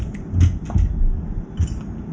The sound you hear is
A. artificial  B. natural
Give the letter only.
B